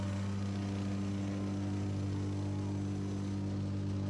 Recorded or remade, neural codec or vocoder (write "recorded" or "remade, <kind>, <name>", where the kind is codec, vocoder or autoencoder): recorded